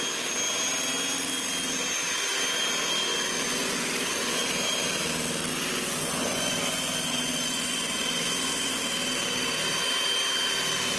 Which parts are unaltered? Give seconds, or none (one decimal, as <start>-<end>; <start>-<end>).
0.0-3.1; 4.4-5.5; 8.8-11.0